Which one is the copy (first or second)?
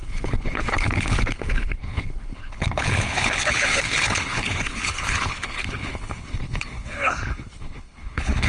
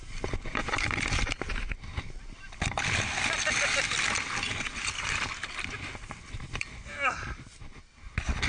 first